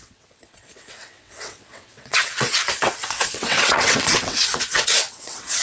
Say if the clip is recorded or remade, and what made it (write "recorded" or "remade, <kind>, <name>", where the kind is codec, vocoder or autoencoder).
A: remade, vocoder, WaveNeXt